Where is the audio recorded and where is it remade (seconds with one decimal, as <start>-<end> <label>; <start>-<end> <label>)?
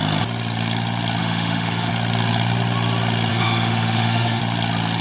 0.0-1.2 recorded; 1.2-1.9 remade; 1.9-3.3 recorded; 3.3-4.4 remade; 4.4-5.0 recorded